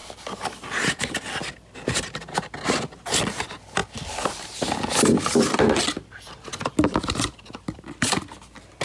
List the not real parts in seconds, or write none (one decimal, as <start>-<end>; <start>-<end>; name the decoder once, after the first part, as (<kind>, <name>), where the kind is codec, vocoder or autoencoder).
none